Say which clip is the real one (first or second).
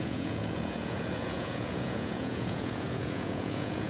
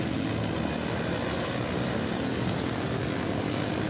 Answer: second